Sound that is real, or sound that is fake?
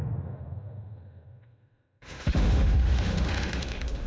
fake